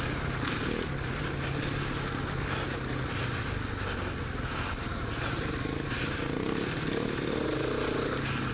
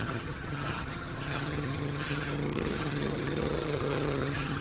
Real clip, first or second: first